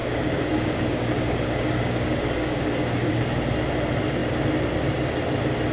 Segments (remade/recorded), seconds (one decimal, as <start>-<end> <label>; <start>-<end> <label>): 0.0-3.2 remade; 3.2-5.7 recorded